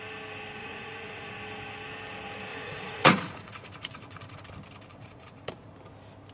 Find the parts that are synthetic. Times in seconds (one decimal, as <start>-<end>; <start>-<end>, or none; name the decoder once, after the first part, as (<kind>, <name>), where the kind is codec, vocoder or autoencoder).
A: 0.6-1.3 (vocoder, Vocos); 2.5-4.4; 4.9-5.7